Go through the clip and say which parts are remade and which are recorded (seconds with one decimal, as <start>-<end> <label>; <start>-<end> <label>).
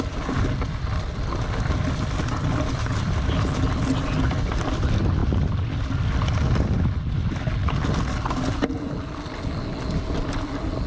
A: 0.0-10.9 recorded